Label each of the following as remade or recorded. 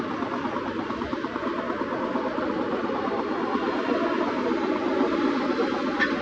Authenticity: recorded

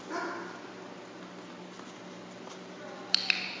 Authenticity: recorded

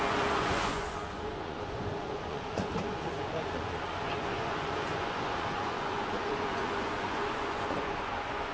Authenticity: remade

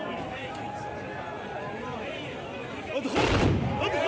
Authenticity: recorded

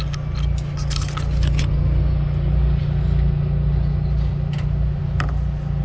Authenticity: recorded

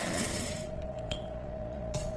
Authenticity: remade